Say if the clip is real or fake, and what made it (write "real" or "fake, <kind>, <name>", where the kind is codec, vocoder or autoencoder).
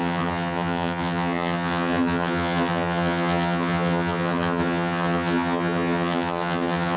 fake, vocoder, HiFi-GAN